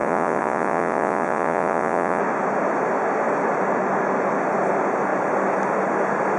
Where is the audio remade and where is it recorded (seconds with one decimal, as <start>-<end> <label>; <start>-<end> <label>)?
0.0-2.2 remade; 2.2-6.4 recorded